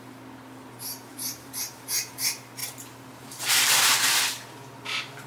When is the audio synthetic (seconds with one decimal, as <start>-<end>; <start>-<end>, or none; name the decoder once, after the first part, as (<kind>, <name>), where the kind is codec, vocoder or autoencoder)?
1.1-2.1 (vocoder, BigVGAN v2); 2.6-3.8